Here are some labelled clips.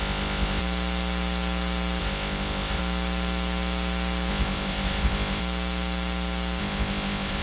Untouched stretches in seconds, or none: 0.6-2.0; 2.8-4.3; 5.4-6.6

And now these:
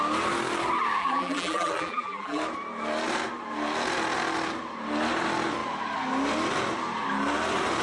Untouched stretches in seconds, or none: 0.0-1.0; 2.4-7.8

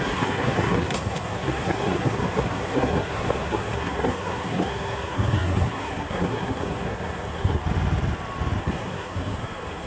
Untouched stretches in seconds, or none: 7.6-8.6

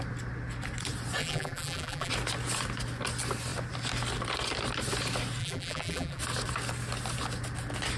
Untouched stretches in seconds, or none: 0.0-1.2; 2.1-5.4; 6.2-8.0

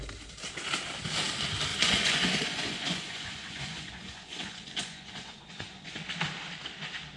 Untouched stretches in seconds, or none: 0.0-1.7; 6.0-7.2

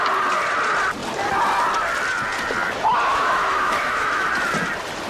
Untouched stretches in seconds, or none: 0.0-3.1; 4.3-5.1

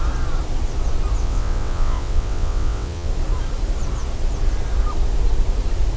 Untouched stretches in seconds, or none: 0.0-1.2; 3.1-6.0